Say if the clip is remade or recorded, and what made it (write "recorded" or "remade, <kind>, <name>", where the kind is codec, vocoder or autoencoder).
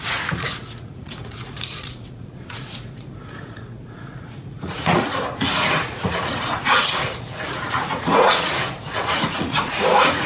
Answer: remade, vocoder, Vocos